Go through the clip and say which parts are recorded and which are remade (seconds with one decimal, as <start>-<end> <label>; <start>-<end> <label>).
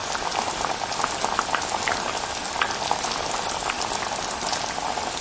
0.0-0.7 remade; 0.7-5.2 recorded